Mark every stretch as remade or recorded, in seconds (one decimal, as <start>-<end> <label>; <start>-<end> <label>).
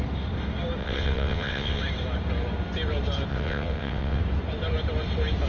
0.0-0.8 recorded; 0.8-1.8 remade; 1.8-3.3 recorded; 3.3-4.2 remade; 4.2-5.5 recorded